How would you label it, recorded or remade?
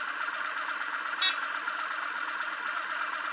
recorded